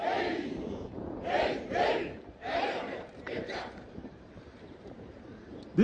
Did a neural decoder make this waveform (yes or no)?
yes